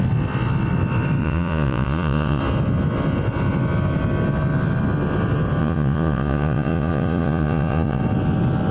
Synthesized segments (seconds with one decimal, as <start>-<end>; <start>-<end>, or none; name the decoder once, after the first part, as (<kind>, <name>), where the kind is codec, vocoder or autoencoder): 1.2-2.4 (vocoder, Vocos); 5.6-8.0